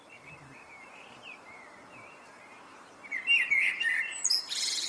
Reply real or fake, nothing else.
fake